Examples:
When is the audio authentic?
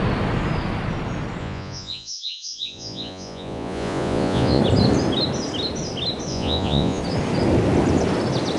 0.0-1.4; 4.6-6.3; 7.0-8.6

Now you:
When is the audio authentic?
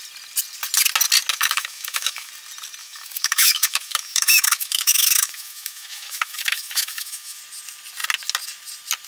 0.0-1.3; 2.3-2.8; 7.4-9.1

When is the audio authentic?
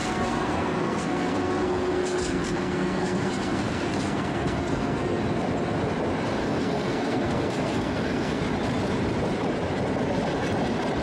5.2-6.4; 8.4-11.0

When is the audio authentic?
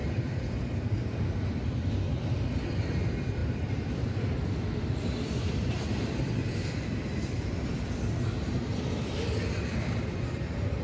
1.5-3.4; 7.7-10.8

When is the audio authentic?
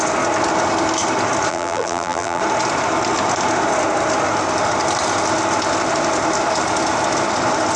0.0-1.5; 2.4-7.8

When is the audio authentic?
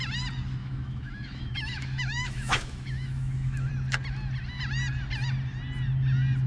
0.0-0.6; 3.7-6.5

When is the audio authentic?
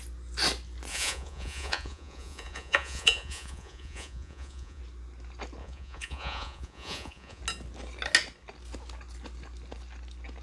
0.0-0.9; 4.8-5.6; 7.4-10.4